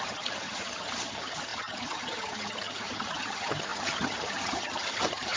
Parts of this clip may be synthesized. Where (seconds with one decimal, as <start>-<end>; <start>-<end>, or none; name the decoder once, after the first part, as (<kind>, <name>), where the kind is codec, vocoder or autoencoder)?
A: 0.0-5.4 (vocoder, HiFi-GAN)